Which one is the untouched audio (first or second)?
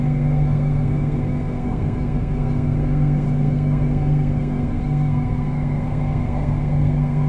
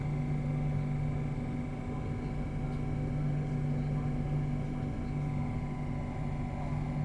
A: second